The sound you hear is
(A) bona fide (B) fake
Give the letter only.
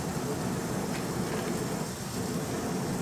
A